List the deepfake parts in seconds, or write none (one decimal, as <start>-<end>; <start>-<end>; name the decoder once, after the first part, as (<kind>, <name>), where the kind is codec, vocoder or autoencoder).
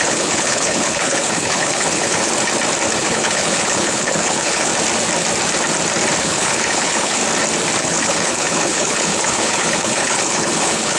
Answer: 0.0-2.3 (codec, HILCodec); 3.0-4.7; 6.2-7.2; 7.8-11.0